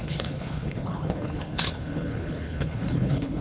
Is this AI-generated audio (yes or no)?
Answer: yes